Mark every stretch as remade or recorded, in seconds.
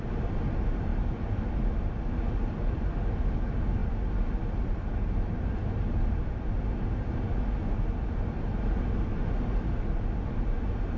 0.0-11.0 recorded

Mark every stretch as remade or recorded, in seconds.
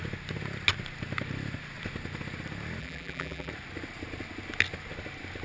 0.0-2.8 recorded; 2.8-3.5 remade; 3.5-5.4 recorded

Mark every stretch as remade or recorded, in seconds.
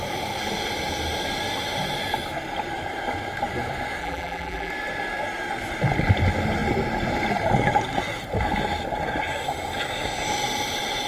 0.0-4.0 recorded; 4.0-4.7 remade; 4.7-11.1 recorded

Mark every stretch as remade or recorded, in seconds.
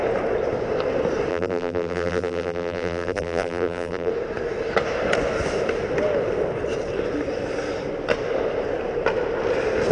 0.0-1.3 recorded; 1.3-4.1 remade; 4.1-9.9 recorded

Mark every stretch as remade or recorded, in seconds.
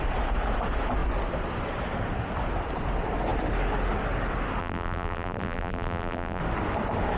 0.0-4.6 recorded; 4.6-6.4 remade; 6.4-7.2 recorded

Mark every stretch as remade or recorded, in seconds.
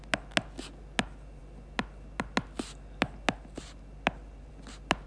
0.0-5.1 recorded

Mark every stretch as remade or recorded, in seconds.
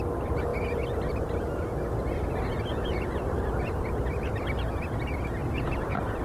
0.0-2.7 recorded; 2.7-3.4 remade; 3.4-5.4 recorded; 5.4-6.2 remade